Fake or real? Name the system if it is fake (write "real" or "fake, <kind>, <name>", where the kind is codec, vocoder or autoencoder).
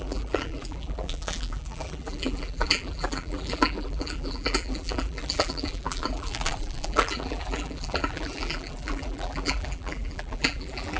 fake, vocoder, BigVGAN v2